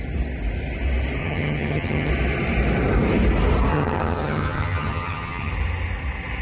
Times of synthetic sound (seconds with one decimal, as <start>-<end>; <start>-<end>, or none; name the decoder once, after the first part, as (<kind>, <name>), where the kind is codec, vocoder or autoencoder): 1.2-2.1 (vocoder, HiFi-GAN); 3.7-5.5